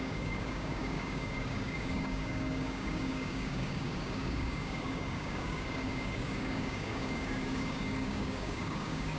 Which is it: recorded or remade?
remade